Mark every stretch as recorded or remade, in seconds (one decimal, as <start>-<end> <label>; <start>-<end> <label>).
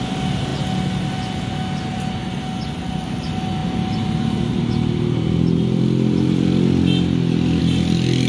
0.0-8.3 recorded